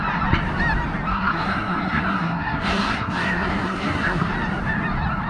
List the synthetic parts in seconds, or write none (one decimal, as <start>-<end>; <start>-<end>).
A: 1.1-4.3